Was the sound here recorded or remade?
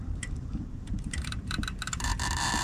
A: remade